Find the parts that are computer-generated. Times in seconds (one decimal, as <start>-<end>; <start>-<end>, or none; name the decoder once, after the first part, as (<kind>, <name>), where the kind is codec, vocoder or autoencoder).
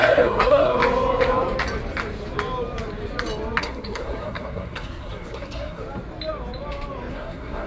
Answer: 0.0-0.8 (codec, SNAC); 3.6-5.8; 7.1-7.7